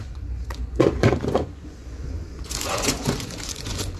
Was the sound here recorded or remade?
remade